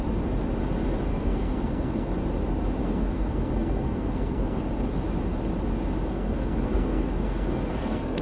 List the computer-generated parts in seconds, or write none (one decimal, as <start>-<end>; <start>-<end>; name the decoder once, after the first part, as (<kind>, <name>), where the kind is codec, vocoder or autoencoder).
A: 1.1-2.1 (codec, SNAC); 2.8-4.6; 6.1-8.2